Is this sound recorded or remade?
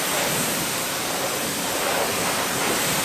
recorded